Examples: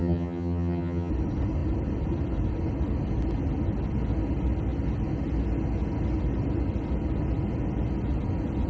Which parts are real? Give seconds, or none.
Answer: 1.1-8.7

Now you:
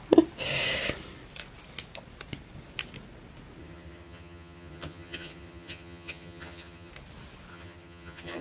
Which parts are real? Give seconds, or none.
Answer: 0.0-3.6; 6.9-7.5